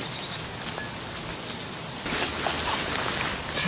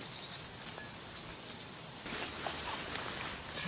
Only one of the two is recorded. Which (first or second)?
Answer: first